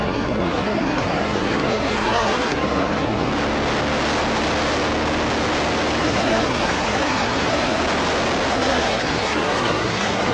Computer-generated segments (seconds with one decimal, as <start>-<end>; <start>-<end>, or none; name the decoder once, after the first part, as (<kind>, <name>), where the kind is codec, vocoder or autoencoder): 0.0-3.3 (codec, SNAC); 6.0-7.8; 8.5-10.3